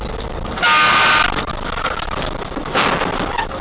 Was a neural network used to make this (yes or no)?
no